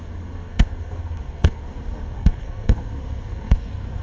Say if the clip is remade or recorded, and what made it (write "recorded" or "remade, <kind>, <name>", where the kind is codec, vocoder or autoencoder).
remade, codec, SNAC